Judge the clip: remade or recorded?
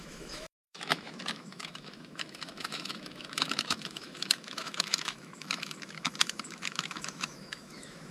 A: remade